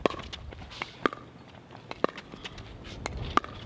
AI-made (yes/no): no